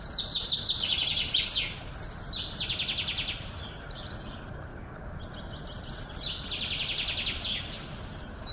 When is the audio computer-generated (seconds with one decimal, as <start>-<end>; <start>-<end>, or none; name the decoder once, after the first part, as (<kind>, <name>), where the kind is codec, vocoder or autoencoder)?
4.7-5.2 (codec, DAC)